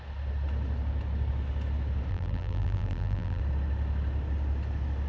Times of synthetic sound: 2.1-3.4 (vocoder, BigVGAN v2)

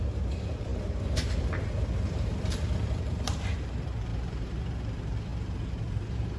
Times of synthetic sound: 0.0-6.4 (vocoder, BigVGAN v2)

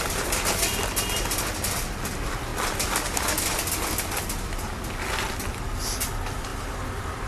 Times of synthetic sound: 6.5-7.3 (vocoder, BigVGAN v2)

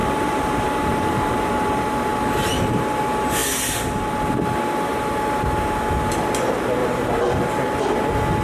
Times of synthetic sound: 0.0-1.5 (vocoder, BigVGAN v2); 6.8-7.3

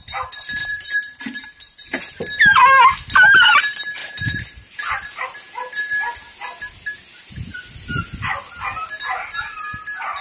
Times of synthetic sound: 0.6-2.0 (vocoder, BigVGAN v2); 4.0-4.8; 7.1-7.6

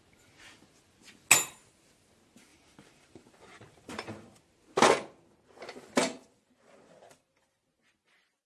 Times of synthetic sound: 2.5-4.3 (vocoder, BigVGAN v2); 6.0-7.3

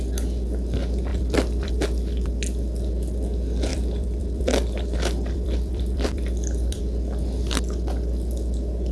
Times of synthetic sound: 1.1-1.7 (vocoder, BigVGAN v2); 3.7-6.8

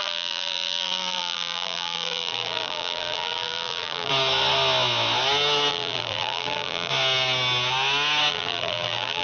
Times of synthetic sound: 0.0-4.1 (vocoder, BigVGAN v2); 5.7-6.9; 8.3-9.2